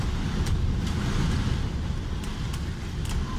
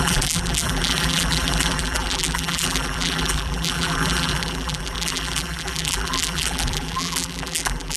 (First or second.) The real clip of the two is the first